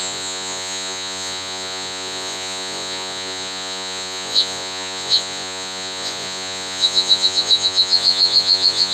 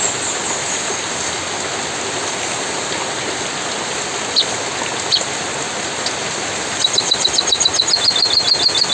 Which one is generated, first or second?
first